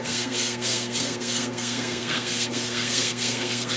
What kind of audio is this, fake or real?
fake